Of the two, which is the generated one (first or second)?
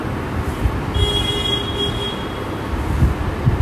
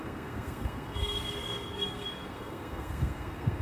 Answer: second